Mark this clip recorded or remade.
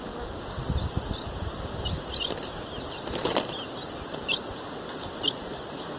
recorded